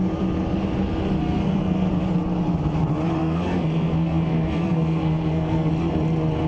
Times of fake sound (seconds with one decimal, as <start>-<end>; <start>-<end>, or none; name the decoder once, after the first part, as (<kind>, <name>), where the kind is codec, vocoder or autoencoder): 1.2-1.9 (codec, SNAC); 3.2-5.7